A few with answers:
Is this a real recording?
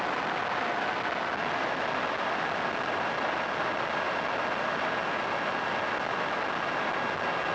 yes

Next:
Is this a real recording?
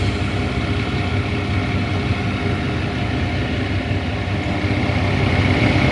yes